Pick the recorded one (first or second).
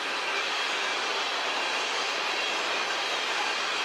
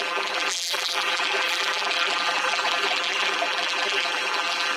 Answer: first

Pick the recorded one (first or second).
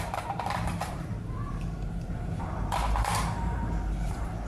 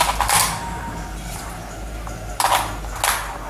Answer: second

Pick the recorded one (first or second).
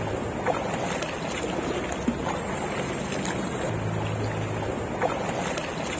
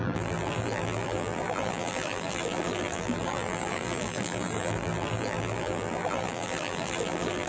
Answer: first